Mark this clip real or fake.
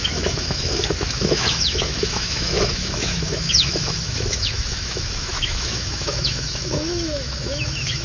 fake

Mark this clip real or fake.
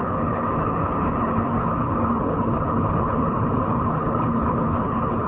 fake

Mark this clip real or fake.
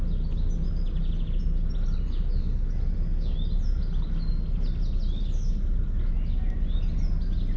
real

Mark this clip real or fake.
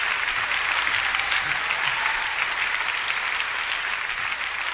real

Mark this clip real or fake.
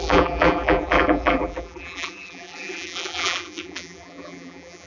fake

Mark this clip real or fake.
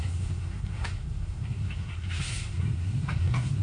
fake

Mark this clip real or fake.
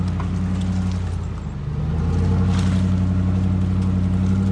real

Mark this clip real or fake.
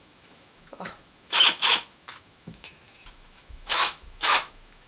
fake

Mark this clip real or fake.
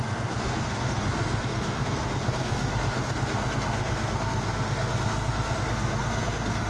fake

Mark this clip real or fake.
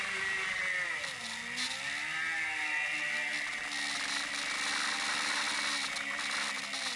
real